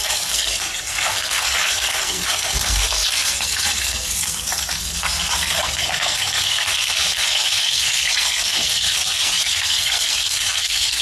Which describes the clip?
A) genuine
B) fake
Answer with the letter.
B